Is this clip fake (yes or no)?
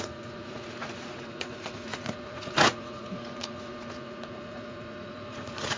yes